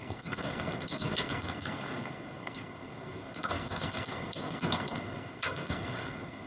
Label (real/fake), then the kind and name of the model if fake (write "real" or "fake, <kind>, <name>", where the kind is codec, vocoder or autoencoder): fake, codec, SNAC